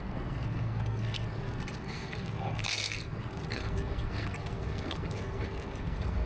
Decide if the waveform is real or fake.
fake